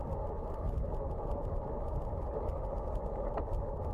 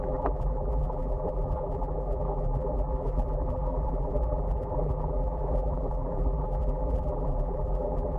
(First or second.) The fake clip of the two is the second